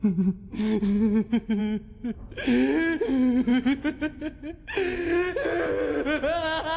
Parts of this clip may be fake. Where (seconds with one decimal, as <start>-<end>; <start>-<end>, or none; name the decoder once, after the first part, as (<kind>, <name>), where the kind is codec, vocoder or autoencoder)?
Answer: 3.5-4.7 (vocoder, Vocos)